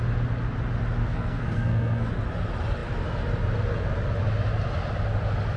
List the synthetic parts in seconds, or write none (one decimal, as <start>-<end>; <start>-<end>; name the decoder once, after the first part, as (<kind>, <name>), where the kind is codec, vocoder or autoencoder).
1.0-2.1 (codec, SNAC)